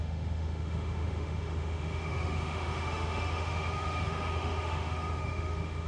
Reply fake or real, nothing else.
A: fake